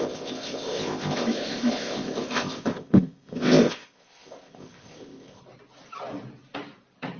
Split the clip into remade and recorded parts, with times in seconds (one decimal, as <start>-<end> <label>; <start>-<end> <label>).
0.0-5.4 remade; 5.4-7.2 recorded

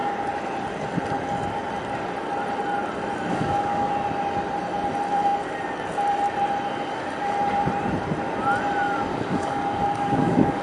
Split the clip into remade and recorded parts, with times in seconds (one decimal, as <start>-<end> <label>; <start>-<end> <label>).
0.0-3.3 recorded; 3.3-3.9 remade; 3.9-9.1 recorded; 9.1-10.6 remade

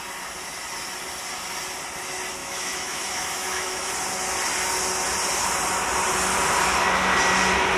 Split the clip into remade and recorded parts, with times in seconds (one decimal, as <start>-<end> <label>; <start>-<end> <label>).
0.0-2.4 recorded; 2.4-3.9 remade; 3.9-7.8 recorded

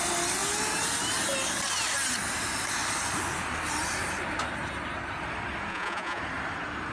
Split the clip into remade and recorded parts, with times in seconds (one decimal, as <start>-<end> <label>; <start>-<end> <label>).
0.0-5.7 recorded; 5.7-6.2 remade; 6.2-6.9 recorded